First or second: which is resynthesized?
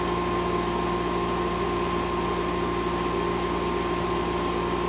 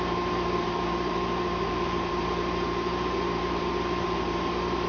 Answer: second